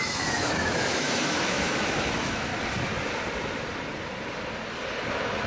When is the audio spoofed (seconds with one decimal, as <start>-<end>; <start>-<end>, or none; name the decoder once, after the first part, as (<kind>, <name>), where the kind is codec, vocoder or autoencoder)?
0.0-2.5 (autoencoder, DAC-VAE); 5.1-5.5